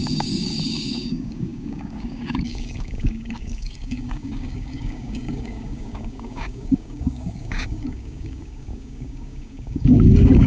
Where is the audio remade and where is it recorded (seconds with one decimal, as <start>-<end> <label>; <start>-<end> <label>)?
0.0-10.5 remade